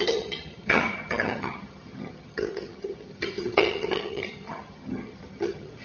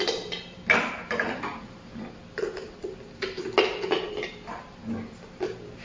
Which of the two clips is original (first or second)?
second